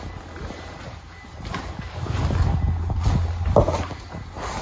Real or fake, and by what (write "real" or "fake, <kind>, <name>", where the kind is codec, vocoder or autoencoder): real